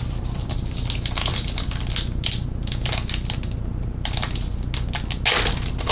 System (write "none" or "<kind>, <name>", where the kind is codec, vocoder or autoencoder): none